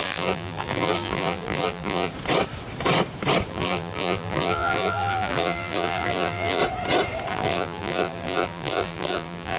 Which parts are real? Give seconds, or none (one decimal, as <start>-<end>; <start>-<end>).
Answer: 2.1-3.5; 6.6-7.3